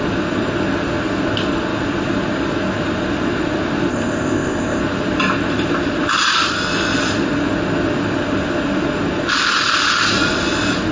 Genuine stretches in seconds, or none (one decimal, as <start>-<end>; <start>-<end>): 0.0-3.9; 4.8-10.9